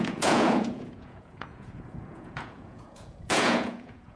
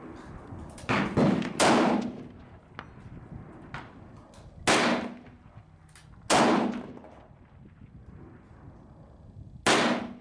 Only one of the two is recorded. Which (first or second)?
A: second